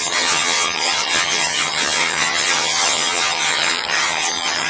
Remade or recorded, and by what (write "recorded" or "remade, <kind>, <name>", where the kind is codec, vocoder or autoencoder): remade, vocoder, HiFi-GAN